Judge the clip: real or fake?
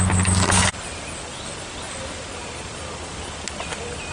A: real